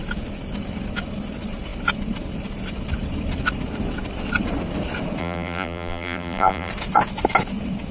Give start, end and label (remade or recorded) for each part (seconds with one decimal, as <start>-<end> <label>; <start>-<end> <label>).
0.0-5.2 recorded; 5.2-6.7 remade; 6.7-7.9 recorded